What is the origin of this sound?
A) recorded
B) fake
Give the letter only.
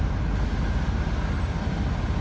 A